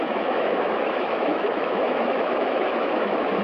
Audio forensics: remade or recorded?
remade